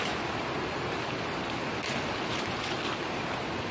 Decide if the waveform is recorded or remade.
recorded